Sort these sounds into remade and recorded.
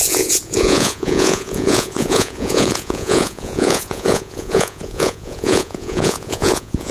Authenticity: remade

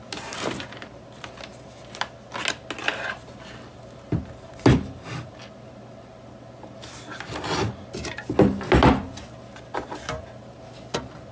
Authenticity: recorded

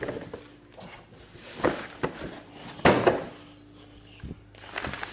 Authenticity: recorded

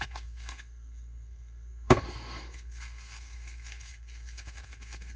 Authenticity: remade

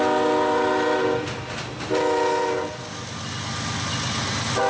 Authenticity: recorded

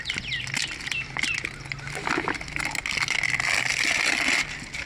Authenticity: recorded